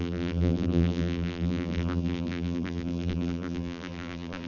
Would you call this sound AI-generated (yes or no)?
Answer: yes